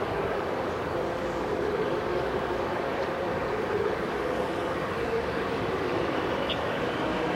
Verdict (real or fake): fake